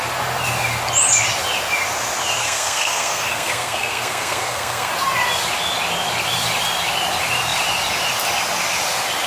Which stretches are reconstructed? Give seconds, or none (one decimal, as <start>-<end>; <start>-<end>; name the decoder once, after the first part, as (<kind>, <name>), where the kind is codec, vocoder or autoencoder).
2.4-4.9 (codec, SNAC)